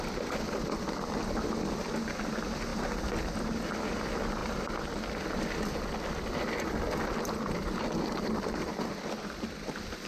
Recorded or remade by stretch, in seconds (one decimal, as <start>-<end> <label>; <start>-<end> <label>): 0.0-10.1 recorded